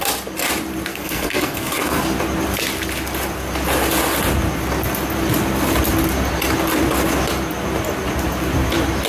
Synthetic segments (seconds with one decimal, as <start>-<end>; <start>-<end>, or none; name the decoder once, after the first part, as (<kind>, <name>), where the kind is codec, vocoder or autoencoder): 0.9-2.0 (codec, SNAC)